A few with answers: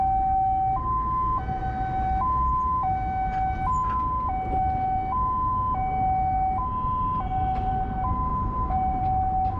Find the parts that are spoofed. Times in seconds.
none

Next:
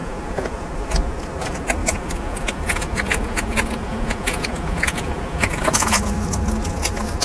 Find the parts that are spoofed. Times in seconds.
0.0-0.7 (vocoder, Vocos); 1.8-6.1

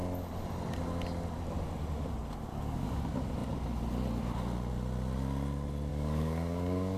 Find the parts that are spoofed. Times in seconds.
2.5-3.0 (codec, DAC); 5.9-7.0

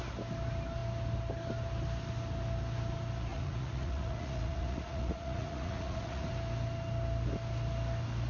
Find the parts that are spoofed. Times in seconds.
3.3-6.3 (vocoder, Vocos)